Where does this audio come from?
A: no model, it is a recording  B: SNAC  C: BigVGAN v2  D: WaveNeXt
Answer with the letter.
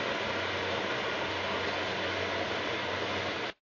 A